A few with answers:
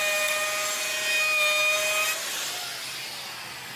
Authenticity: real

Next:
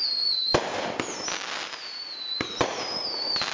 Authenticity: real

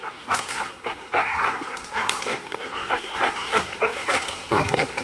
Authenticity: fake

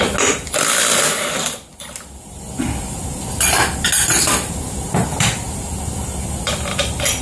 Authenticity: real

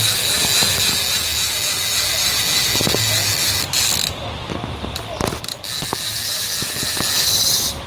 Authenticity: real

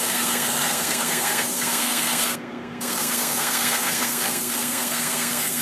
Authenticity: fake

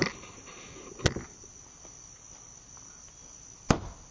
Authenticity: real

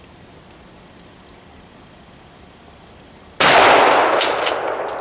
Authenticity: real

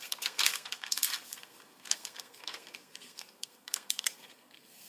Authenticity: fake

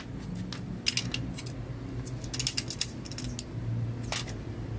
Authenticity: real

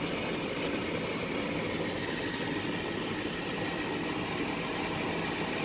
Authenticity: real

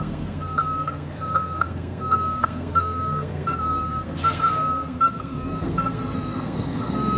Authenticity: fake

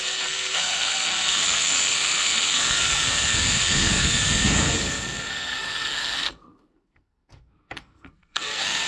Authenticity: fake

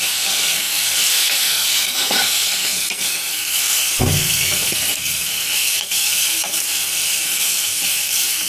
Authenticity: fake